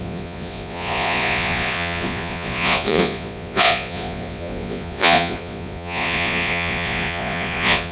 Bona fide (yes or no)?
no